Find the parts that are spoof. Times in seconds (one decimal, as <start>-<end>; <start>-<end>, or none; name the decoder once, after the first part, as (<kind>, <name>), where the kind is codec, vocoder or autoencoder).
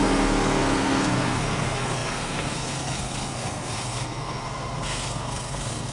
0.0-5.9 (codec, SNAC)